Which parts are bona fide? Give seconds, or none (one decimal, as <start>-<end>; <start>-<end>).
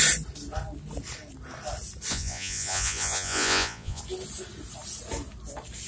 0.0-2.1; 4.0-5.9